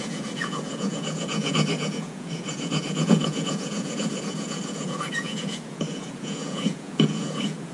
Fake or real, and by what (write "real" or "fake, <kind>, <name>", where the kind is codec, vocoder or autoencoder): fake, vocoder, Vocos